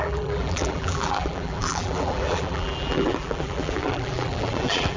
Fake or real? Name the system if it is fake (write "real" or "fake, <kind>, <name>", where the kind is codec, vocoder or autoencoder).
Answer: fake, vocoder, BigVGAN v2